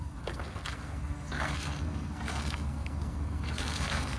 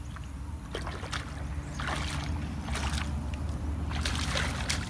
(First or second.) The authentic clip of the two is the second